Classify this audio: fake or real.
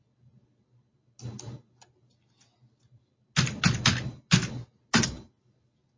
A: real